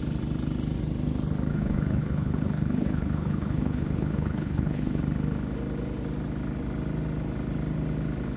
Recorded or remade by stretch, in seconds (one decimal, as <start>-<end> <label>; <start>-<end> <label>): 0.0-1.5 recorded; 1.5-5.0 remade; 5.0-8.4 recorded